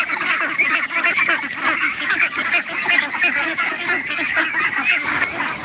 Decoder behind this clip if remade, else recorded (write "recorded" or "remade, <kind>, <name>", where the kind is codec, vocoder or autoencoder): remade, codec, DAC